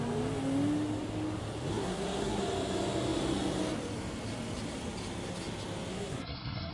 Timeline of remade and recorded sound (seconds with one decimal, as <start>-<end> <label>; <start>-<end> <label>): 0.0-1.7 recorded; 1.7-2.4 remade; 2.4-5.9 recorded; 5.9-6.7 remade